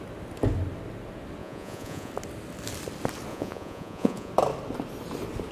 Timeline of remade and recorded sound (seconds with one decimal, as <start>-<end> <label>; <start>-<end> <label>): 0.0-1.4 recorded; 1.4-2.1 remade; 2.1-3.3 recorded; 3.3-4.3 remade; 4.3-5.5 recorded